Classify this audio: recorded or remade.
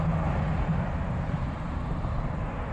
recorded